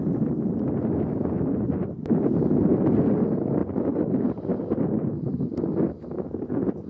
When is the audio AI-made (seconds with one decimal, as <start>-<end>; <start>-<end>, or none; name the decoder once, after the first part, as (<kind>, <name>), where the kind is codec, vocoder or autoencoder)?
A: none